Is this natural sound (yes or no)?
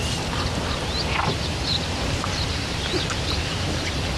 yes